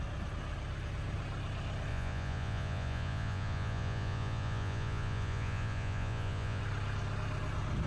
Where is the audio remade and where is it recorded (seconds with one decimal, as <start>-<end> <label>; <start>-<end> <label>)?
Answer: 0.0-1.9 recorded; 1.9-6.6 remade; 6.6-7.9 recorded